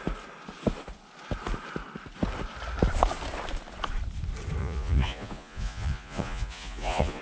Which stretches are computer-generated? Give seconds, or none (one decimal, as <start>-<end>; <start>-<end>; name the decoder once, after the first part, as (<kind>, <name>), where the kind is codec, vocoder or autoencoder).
4.6-7.2 (vocoder, Vocos)

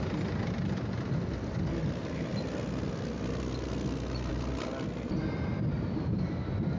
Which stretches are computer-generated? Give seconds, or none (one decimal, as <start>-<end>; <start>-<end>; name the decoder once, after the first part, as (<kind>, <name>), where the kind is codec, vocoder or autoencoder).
none